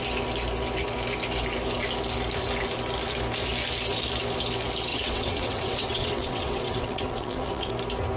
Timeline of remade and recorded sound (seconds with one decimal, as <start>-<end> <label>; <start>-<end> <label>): 0.0-4.9 recorded; 4.9-7.7 remade; 7.7-8.2 recorded